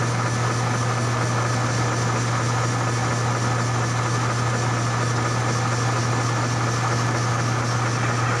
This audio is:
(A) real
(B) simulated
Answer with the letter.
A